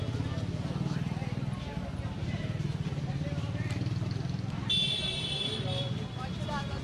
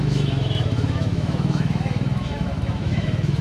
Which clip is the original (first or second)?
first